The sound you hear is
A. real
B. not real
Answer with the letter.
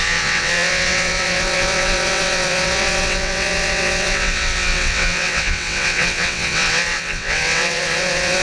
B